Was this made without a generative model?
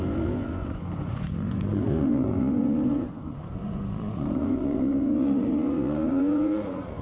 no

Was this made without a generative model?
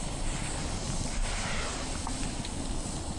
yes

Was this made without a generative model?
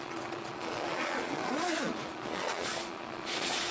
no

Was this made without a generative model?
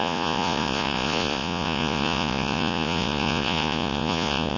no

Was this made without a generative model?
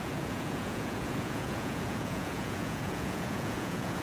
no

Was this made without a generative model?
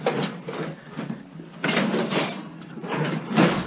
yes